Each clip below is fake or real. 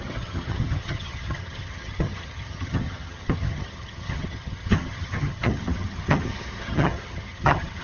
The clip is fake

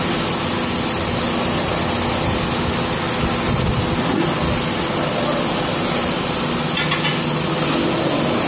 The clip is real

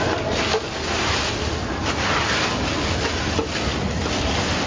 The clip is real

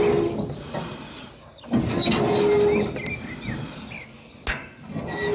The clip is real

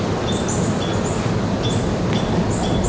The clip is real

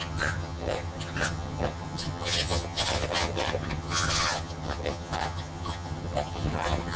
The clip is fake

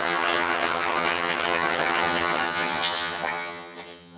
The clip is fake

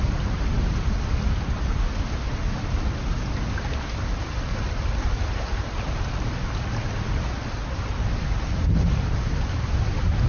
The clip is real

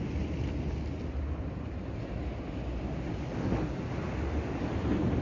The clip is real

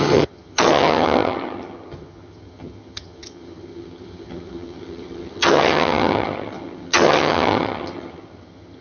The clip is fake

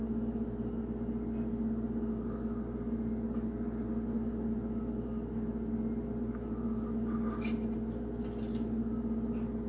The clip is real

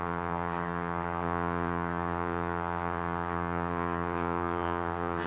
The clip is fake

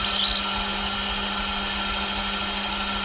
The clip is real